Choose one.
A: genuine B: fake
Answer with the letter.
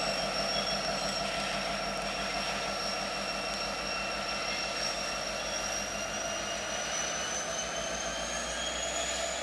A